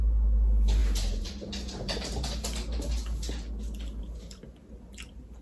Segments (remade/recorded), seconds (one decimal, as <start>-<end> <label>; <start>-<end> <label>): 0.0-5.4 recorded